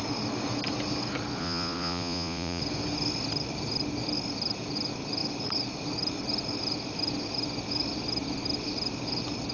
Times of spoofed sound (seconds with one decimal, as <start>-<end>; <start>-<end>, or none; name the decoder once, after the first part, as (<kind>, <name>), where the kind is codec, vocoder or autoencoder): 1.4-2.6 (vocoder, Vocos)